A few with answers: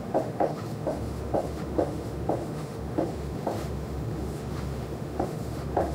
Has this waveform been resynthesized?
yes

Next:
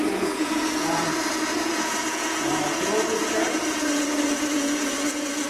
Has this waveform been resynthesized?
yes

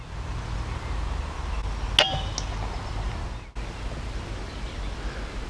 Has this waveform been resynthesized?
no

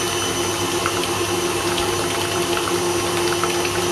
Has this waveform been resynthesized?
no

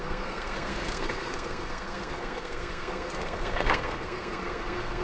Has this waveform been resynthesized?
yes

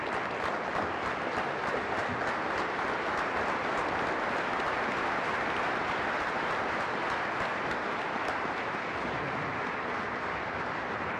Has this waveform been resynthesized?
no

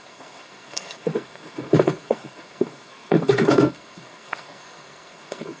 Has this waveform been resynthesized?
yes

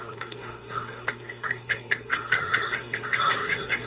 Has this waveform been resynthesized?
yes